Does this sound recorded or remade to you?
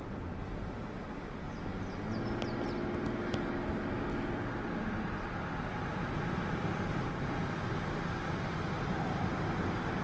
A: recorded